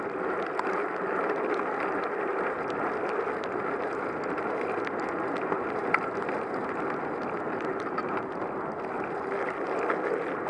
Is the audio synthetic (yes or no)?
no